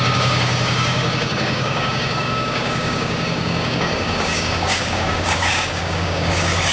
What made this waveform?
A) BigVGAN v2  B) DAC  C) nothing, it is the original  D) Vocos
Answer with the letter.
B